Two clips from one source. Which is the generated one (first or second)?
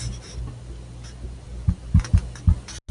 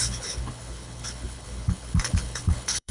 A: second